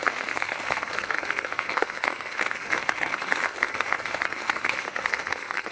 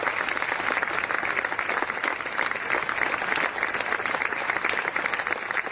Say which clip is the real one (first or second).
second